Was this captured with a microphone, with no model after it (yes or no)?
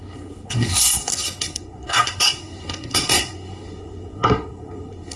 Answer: no